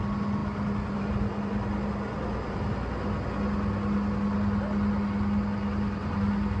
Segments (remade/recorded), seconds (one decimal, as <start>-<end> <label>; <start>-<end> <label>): 0.0-6.6 recorded